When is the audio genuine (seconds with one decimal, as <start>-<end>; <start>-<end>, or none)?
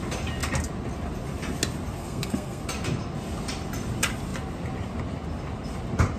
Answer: 0.0-2.0; 2.6-6.2